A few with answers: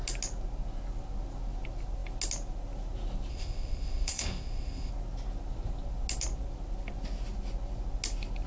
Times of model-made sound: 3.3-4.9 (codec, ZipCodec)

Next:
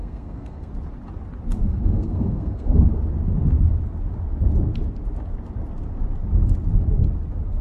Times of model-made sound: 0.0-0.7 (codec, SNAC); 1.6-2.9

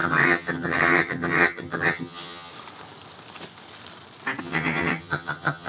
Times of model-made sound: 0.0-2.5 (vocoder, HiFi-GAN); 4.4-5.7

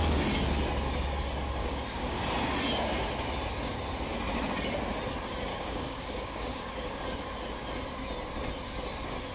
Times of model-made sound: 1.6-2.2 (codec, DAC); 5.5-7.0

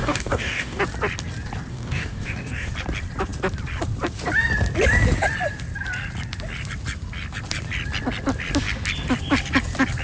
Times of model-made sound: 0.0-0.8 (codec, DAC); 1.7-2.7